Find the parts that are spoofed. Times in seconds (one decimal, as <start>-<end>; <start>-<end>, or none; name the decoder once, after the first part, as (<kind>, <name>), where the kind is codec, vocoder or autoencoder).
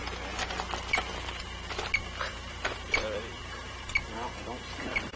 2.0-5.2 (vocoder, BigVGAN v2)